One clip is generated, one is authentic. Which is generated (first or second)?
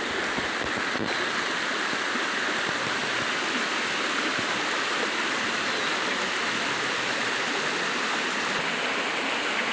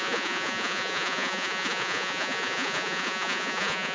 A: second